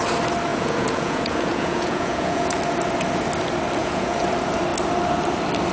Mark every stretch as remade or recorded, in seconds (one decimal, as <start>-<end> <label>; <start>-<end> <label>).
0.0-0.5 recorded; 0.5-2.6 remade; 2.6-3.8 recorded; 3.8-4.3 remade; 4.3-5.7 recorded